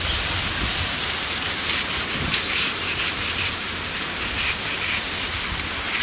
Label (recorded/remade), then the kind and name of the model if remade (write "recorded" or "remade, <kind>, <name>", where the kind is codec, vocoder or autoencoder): remade, vocoder, BigVGAN v2